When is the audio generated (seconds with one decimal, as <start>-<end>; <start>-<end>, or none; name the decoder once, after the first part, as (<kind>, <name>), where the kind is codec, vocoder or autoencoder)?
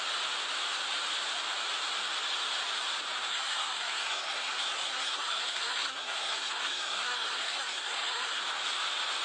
3.3-8.4 (codec, SNAC)